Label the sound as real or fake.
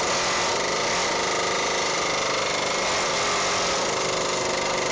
real